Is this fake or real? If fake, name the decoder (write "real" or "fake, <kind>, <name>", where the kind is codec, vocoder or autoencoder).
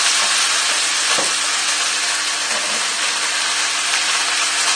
real